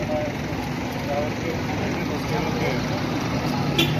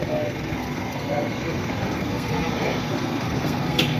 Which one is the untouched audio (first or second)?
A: first